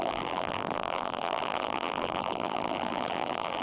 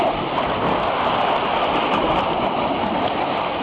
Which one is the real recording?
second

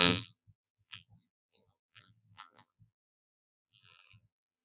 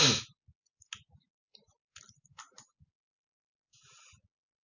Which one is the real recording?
second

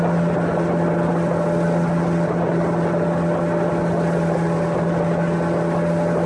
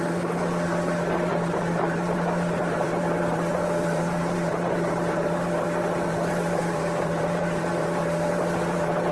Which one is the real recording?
first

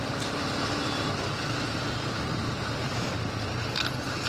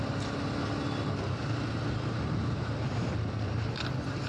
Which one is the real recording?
second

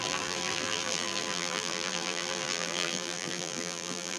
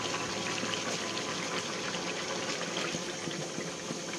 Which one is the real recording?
second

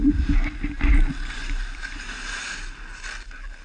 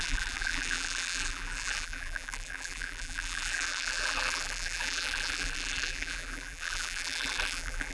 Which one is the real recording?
first